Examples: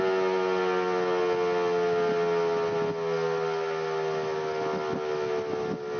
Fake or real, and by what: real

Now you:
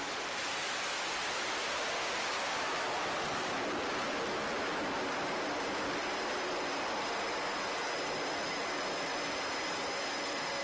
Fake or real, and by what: fake, vocoder, BigVGAN v2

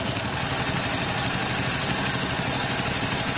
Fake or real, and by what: real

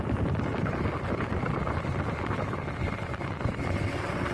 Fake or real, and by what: real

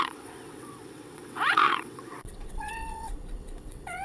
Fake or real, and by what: fake, vocoder, WaveNeXt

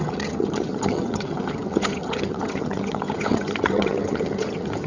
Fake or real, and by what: fake, vocoder, HiFi-GAN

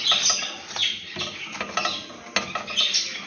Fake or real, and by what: real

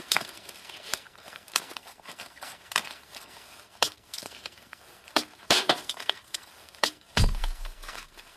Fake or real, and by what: fake, codec, SNAC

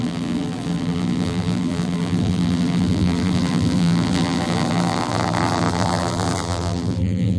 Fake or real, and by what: fake, vocoder, BigVGAN v2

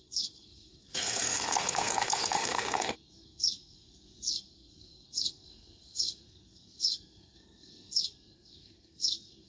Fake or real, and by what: fake, codec, SNAC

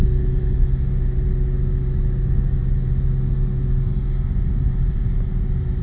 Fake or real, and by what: real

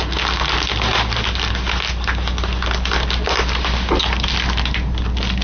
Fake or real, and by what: real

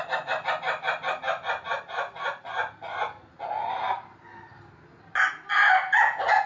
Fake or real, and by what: real